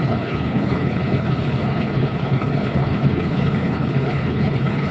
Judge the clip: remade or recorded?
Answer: remade